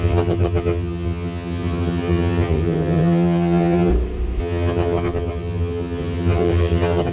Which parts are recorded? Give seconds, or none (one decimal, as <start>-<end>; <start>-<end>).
3.9-4.4